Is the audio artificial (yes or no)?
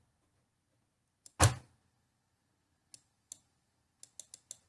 no